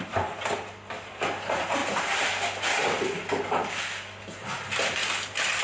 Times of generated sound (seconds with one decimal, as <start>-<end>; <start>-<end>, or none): none

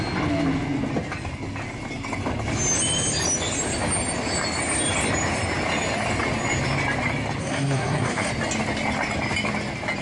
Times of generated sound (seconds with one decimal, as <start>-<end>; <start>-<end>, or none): 7.4-8.3